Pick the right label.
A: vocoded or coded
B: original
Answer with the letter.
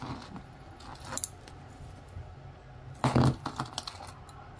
B